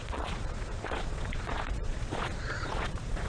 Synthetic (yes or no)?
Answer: yes